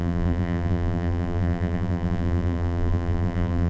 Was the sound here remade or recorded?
remade